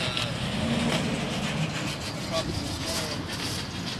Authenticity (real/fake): real